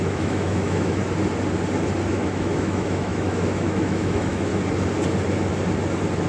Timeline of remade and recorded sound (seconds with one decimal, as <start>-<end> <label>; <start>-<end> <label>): 0.0-1.0 remade; 1.0-2.1 recorded; 2.1-4.5 remade; 4.5-6.3 recorded